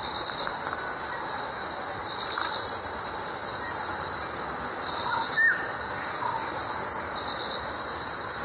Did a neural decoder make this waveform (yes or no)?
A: no